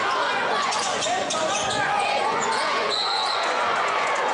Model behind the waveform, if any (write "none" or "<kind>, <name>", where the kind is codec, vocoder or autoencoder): vocoder, Vocos